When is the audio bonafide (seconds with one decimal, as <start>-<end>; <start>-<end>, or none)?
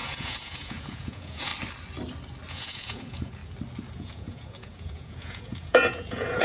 1.5-2.5; 3.4-4.0